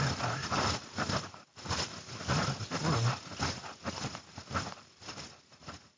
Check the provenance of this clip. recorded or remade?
recorded